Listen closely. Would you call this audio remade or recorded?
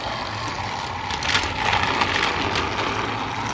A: recorded